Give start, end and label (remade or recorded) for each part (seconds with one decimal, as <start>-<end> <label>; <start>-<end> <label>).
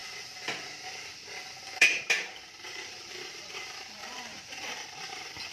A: 0.0-5.5 remade